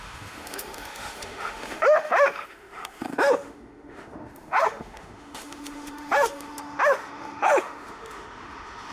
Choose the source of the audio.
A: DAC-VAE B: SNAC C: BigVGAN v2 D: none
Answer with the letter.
A